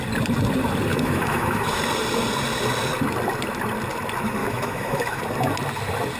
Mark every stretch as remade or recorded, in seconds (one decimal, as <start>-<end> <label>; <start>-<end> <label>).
0.0-0.9 recorded; 0.9-1.8 remade; 1.8-4.4 recorded; 4.4-5.2 remade; 5.2-6.2 recorded